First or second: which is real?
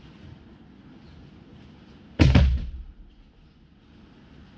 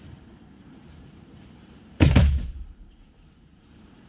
first